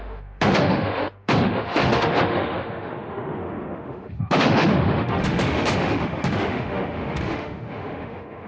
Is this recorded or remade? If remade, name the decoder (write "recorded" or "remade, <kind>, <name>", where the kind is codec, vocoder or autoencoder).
remade, autoencoder, DAC-VAE